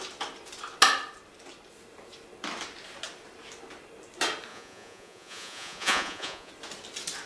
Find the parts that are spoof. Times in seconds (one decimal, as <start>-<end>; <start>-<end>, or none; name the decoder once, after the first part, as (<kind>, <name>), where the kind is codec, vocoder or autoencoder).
4.5-6.5 (vocoder, Vocos)